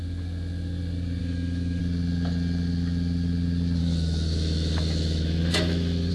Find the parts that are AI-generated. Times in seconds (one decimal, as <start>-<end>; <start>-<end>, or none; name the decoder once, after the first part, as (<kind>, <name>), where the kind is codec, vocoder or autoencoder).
1.2-1.8 (autoencoder, DAC-VAE); 3.8-6.1